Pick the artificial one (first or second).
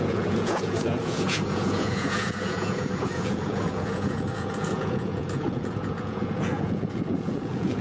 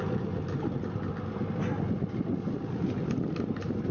first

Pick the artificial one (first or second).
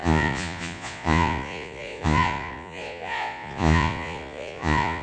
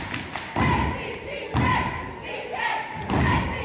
first